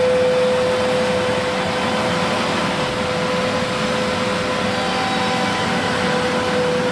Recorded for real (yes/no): yes